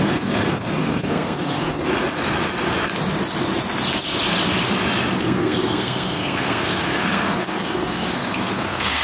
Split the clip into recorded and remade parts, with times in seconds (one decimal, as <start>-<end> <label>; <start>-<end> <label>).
0.0-1.8 remade; 1.8-5.2 recorded; 5.2-9.0 remade